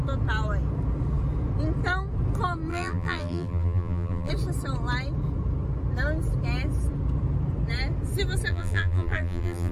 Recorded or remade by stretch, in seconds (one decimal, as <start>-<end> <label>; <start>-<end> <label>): 0.0-2.7 recorded; 2.7-4.3 remade; 4.3-8.5 recorded; 8.5-9.7 remade